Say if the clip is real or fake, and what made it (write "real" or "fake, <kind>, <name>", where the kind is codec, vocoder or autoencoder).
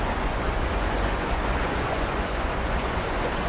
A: fake, vocoder, Vocos